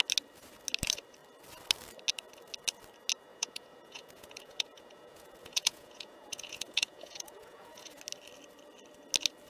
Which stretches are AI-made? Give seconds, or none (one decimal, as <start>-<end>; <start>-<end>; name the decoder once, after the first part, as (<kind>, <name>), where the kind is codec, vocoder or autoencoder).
3.3-8.0 (vocoder, Vocos)